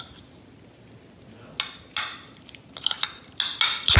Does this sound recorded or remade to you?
recorded